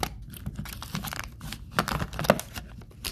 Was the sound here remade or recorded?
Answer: recorded